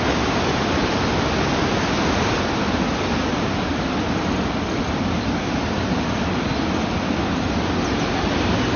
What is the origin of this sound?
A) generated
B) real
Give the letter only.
A